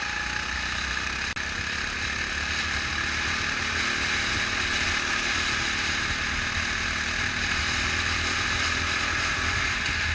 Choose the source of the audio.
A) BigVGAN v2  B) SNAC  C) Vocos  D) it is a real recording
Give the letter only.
D